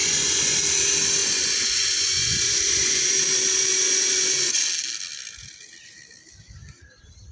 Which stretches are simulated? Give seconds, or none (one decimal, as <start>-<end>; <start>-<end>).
0.0-0.6; 1.2-3.1; 3.7-4.6